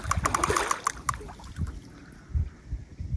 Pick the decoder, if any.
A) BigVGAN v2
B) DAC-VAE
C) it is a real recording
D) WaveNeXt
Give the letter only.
C